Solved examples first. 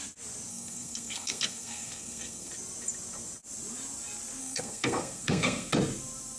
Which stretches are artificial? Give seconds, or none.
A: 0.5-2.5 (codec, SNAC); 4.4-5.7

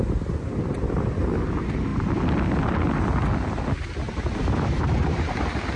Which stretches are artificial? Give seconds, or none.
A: none

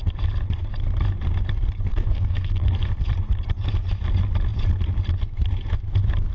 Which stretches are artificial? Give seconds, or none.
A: 1.9-2.7 (codec, SNAC)

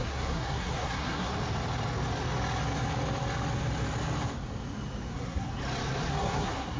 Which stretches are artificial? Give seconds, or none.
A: 0.0-1.3 (codec, SNAC); 5.1-5.5; 6.1-6.8